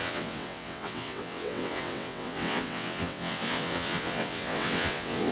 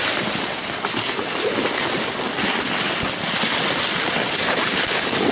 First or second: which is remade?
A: first